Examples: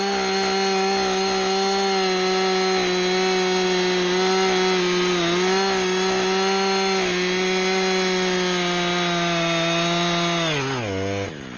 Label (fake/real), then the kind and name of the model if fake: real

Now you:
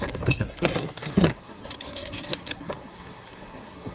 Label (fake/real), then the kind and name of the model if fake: fake, codec, SNAC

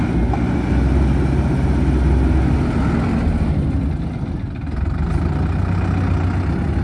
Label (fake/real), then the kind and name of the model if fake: real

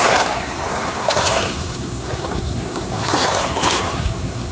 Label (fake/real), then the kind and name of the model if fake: fake, codec, SNAC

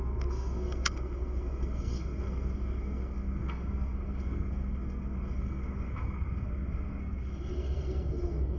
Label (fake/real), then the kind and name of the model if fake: fake, codec, SNAC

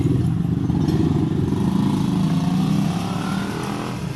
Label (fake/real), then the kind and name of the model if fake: real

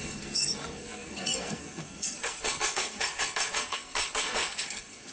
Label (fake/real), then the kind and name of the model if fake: fake, codec, SNAC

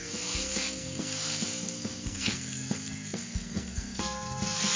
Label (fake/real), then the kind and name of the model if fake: fake, codec, SNAC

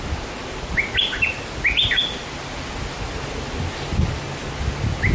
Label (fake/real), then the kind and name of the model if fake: real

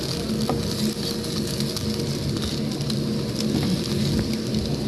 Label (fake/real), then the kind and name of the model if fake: real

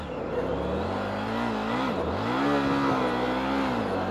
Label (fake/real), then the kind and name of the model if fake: real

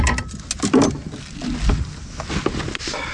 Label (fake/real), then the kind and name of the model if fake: real